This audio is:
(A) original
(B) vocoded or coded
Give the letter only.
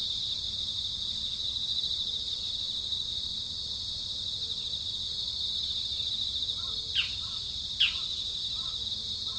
A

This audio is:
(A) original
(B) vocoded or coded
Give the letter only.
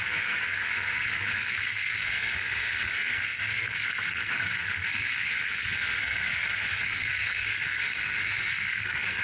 B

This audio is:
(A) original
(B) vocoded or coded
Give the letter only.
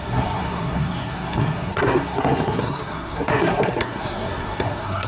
B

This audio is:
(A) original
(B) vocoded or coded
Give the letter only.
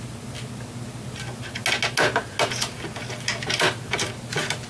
A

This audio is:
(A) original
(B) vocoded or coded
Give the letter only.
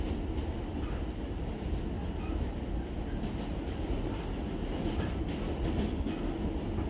A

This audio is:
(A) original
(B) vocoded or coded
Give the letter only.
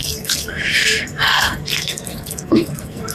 B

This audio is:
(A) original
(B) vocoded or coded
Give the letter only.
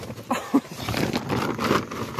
A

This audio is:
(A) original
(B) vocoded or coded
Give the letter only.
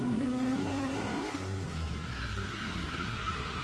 B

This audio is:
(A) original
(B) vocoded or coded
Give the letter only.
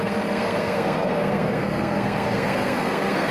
B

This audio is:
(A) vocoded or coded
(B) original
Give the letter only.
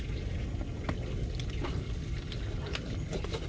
B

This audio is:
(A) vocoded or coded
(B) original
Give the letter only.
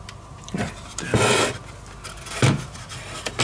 B